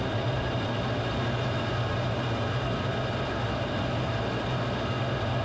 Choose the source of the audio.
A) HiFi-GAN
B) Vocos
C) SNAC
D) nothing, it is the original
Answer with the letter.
D